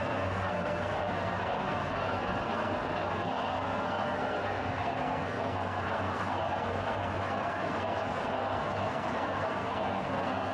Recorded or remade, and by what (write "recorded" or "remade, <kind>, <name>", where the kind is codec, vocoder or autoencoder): remade, codec, SNAC